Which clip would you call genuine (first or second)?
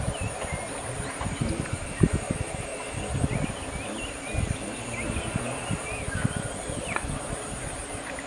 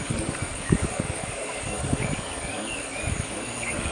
first